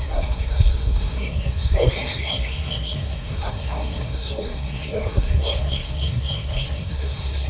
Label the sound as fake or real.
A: fake